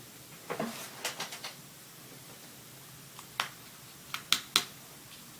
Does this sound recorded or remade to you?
recorded